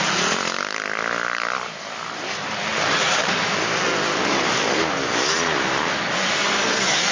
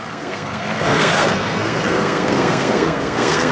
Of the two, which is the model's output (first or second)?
second